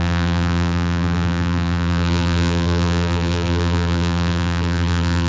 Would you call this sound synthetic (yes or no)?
yes